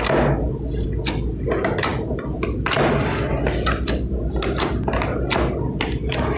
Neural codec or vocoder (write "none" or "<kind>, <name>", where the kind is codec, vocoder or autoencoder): none